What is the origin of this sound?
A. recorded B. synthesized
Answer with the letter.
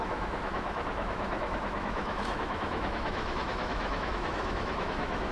B